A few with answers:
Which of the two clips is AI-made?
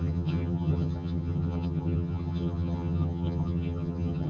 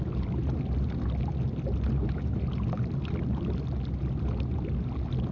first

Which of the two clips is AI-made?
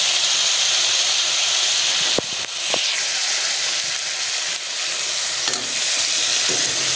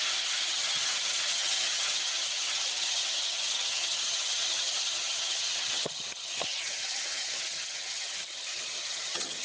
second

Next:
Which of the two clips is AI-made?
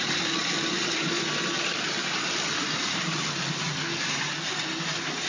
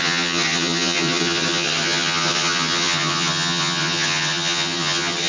second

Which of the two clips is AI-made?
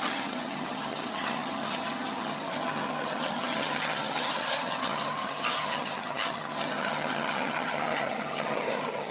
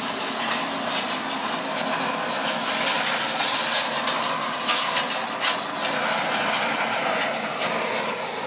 first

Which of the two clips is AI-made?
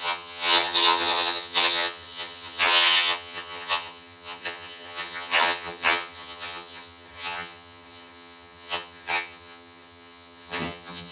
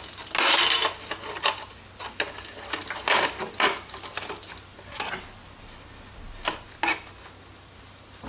first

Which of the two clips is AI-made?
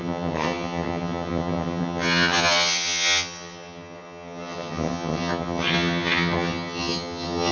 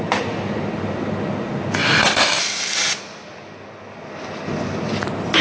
first